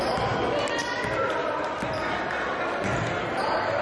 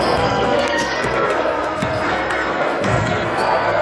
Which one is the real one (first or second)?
first